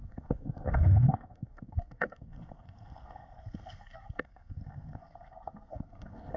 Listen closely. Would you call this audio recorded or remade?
remade